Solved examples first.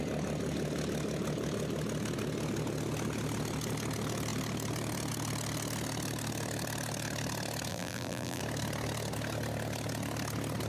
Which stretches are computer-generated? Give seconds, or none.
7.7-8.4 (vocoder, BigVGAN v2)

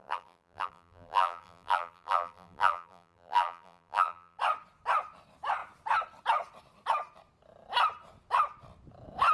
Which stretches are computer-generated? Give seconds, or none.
0.0-4.4 (vocoder, BigVGAN v2)

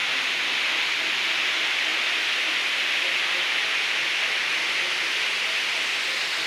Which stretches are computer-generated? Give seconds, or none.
none

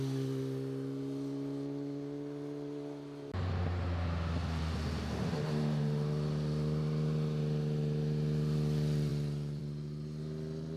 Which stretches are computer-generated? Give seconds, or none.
none

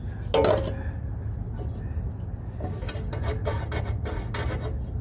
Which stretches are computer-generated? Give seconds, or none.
none

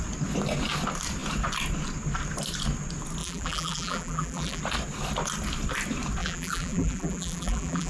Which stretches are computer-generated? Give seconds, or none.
3.2-4.6 (vocoder, BigVGAN v2); 6.2-7.9

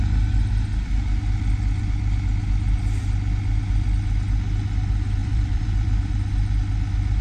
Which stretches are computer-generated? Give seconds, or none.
5.2-6.1 (vocoder, BigVGAN v2)

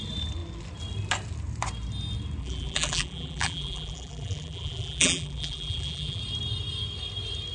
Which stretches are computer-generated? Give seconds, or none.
2.4-6.2 (vocoder, BigVGAN v2)